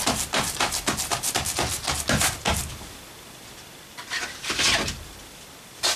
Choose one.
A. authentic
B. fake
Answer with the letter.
A